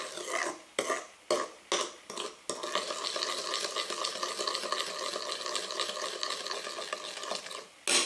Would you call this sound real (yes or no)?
yes